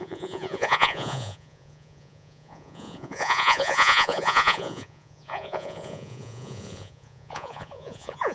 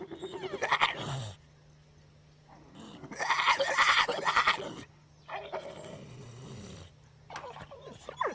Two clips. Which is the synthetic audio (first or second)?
first